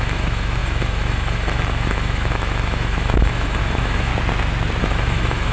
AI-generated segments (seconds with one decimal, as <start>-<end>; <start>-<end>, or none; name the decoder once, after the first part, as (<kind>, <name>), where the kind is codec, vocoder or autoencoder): 0.0-4.1 (autoencoder, DAC-VAE); 4.8-5.5